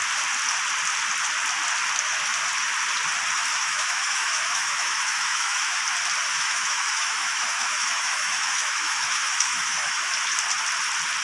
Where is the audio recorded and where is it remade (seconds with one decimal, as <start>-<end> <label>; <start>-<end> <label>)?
0.0-3.6 recorded; 3.6-5.8 remade; 5.8-6.3 recorded; 6.3-10.1 remade; 10.1-11.2 recorded